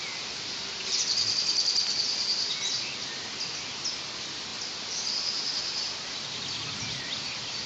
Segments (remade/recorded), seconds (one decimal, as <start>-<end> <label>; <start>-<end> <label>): 0.0-7.7 recorded